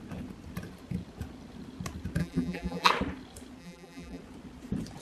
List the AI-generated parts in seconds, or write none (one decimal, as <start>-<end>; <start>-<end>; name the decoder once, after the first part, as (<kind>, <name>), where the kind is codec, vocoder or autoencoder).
2.2-2.9 (vocoder, BigVGAN v2); 3.6-4.2